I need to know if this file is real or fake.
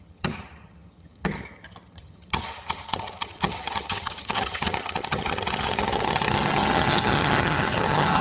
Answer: fake